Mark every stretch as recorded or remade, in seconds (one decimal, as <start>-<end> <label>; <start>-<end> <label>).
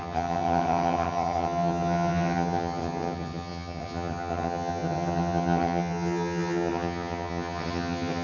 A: 0.0-8.2 remade